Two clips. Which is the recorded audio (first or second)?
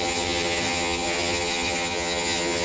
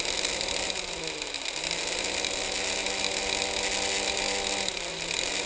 second